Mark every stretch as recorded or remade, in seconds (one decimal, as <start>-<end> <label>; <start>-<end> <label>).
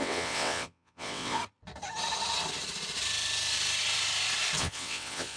0.0-1.4 remade; 1.4-4.6 recorded; 4.6-5.4 remade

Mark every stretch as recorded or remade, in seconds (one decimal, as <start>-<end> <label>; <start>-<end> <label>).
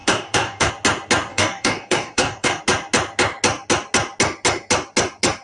0.0-0.7 remade; 0.7-1.3 recorded; 1.3-2.6 remade; 2.6-5.4 recorded